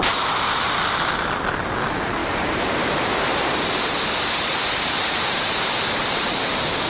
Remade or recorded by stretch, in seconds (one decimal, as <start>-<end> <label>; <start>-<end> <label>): 0.0-2.2 recorded; 2.2-6.3 remade; 6.3-6.9 recorded